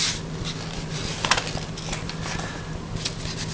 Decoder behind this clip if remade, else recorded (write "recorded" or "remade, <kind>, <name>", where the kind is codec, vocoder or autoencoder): recorded